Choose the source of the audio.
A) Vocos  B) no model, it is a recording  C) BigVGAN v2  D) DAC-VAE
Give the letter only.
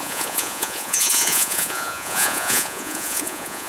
A